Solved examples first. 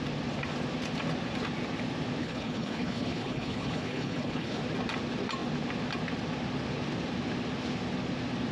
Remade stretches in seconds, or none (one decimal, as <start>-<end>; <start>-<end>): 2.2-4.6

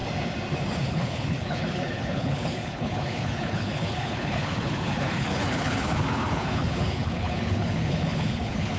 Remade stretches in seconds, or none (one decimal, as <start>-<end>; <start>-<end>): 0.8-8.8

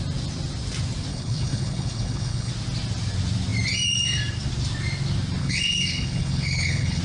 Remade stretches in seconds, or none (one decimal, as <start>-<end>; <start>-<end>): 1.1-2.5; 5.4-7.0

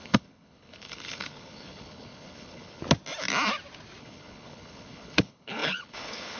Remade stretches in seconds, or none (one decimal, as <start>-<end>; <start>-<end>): 0.0-2.8; 4.0-6.4